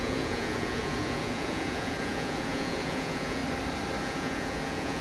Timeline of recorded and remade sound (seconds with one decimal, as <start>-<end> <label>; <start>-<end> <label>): 0.0-3.4 remade; 3.4-4.0 recorded; 4.0-5.0 remade